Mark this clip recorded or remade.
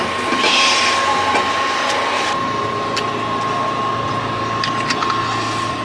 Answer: recorded